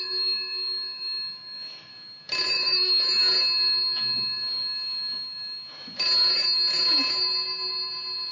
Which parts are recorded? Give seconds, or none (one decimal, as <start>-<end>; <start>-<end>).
1.9-2.5; 3.2-8.3

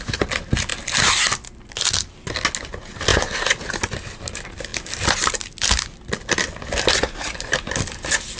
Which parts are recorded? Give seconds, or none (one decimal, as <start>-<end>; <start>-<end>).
0.0-8.4

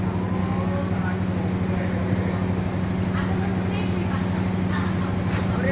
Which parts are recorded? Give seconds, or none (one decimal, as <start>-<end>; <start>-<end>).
0.0-0.4; 1.0-5.7

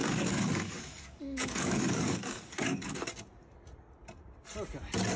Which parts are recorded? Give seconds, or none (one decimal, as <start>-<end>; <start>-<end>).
3.1-5.2

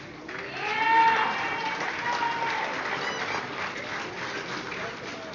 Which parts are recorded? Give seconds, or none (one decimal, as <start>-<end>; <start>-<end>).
0.0-5.3

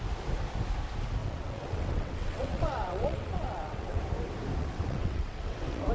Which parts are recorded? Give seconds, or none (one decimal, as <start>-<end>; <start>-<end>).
0.0-1.2; 4.0-4.6